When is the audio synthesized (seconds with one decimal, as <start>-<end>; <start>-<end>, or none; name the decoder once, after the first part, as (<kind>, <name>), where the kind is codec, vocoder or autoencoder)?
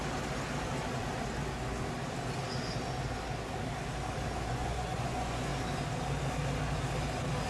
4.5-5.5 (vocoder, Vocos)